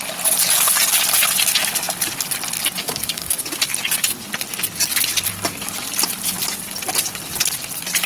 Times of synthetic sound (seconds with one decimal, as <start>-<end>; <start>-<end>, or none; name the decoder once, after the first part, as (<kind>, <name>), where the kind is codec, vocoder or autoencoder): 2.8-3.5 (codec, DAC)